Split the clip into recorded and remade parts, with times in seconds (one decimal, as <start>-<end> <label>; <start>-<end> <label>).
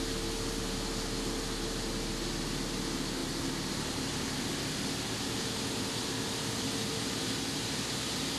0.0-8.4 recorded